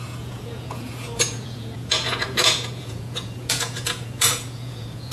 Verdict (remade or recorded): remade